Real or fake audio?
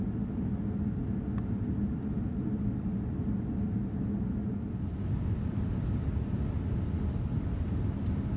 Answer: real